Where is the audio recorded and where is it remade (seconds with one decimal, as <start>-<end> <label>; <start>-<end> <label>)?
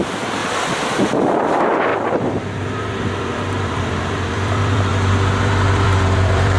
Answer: 0.0-0.4 remade; 0.4-1.0 recorded; 1.0-1.9 remade; 1.9-3.0 recorded; 3.0-4.9 remade; 4.9-5.4 recorded; 5.4-6.6 remade